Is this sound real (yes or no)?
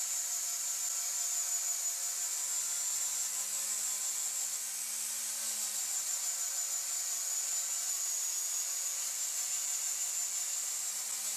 yes